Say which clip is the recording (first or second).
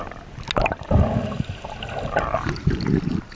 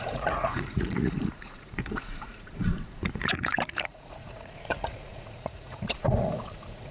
first